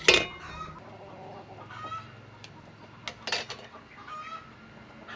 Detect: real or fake real